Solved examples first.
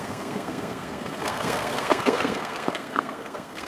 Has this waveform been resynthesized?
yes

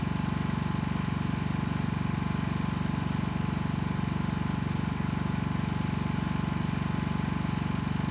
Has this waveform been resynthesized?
no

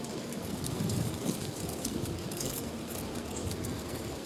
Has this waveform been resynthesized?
yes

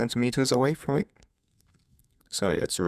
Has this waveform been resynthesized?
yes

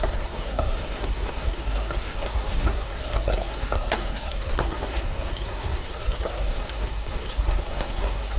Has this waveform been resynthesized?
yes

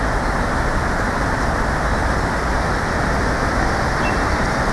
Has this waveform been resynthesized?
no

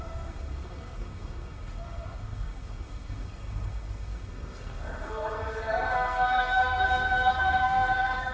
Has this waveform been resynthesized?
yes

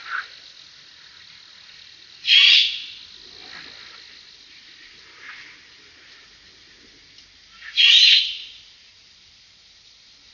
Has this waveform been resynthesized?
no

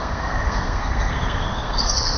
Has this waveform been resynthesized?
yes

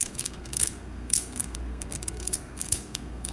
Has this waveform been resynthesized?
yes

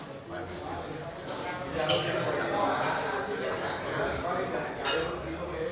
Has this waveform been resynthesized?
no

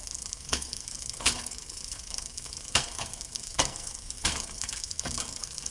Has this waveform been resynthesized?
yes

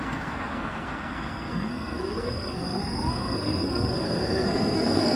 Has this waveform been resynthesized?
yes